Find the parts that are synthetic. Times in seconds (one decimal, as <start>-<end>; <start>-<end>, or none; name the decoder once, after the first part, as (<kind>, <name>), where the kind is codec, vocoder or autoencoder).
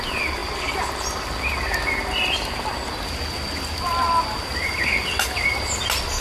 none